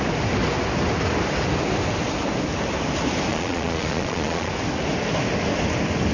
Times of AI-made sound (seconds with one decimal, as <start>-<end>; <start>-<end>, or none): 3.3-4.5